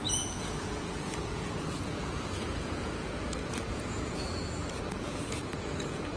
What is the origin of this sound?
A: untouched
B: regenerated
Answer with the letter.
B